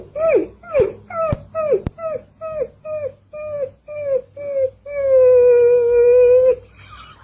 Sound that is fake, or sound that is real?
real